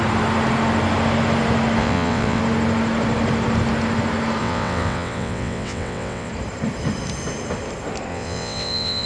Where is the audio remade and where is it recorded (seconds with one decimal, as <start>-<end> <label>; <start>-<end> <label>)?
0.0-1.8 recorded; 1.8-2.4 remade; 2.4-4.4 recorded; 4.4-6.3 remade; 6.3-8.1 recorded; 8.1-9.1 remade